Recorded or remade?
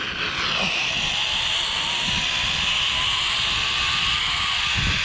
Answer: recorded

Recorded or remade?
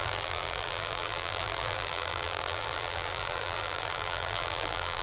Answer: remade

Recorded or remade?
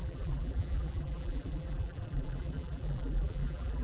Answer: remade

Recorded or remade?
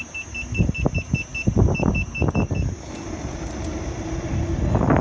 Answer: recorded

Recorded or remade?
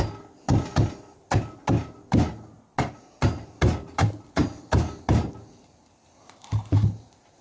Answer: recorded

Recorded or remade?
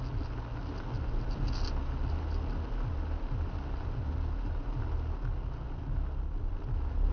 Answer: recorded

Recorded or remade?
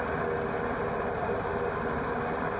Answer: recorded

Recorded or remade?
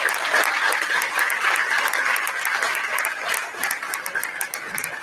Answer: recorded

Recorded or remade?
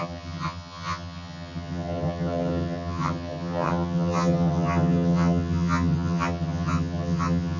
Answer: remade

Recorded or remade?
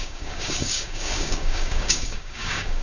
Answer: remade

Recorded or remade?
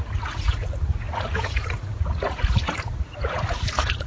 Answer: remade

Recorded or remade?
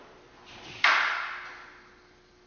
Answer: recorded